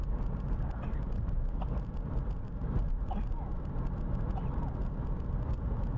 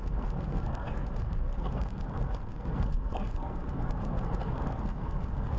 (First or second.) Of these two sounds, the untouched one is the first